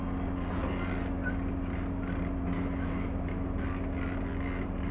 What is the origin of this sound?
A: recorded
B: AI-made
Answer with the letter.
A